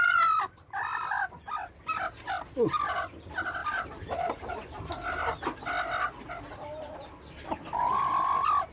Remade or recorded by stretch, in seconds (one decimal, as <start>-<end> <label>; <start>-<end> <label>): 0.0-3.6 recorded; 3.6-4.5 remade; 4.5-8.7 recorded